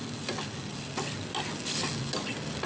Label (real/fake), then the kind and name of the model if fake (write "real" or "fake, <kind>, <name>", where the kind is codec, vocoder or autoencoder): real